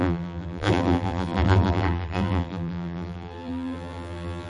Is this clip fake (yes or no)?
yes